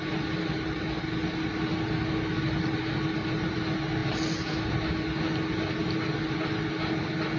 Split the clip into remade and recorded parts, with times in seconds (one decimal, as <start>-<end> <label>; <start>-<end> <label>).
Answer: 0.0-7.4 recorded